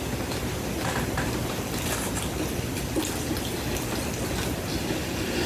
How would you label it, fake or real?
real